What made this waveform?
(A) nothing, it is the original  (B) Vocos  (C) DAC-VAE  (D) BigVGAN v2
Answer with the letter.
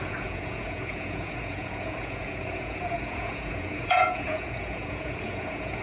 B